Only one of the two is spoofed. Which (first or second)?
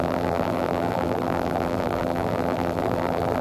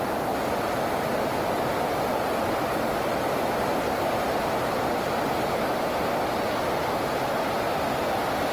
first